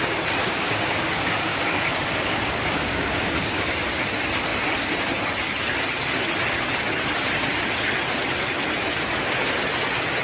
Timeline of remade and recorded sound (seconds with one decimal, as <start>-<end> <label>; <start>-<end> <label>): 0.0-0.4 recorded; 0.4-3.7 remade; 3.7-10.2 recorded